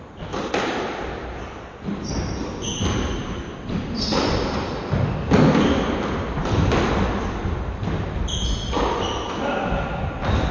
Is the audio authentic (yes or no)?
yes